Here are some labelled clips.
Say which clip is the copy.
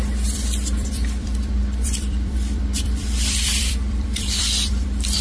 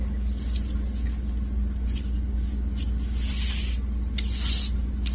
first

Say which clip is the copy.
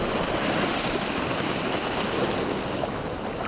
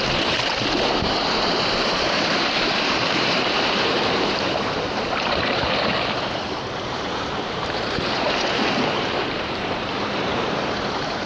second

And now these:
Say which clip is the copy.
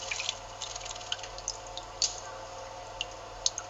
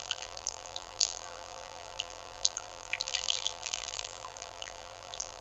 second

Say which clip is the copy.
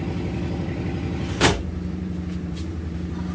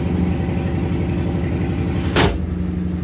first